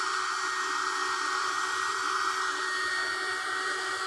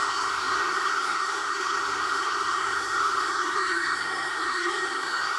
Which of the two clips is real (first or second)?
first